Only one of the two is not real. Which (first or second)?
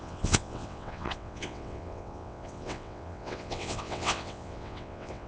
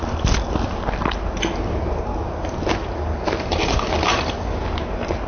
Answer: first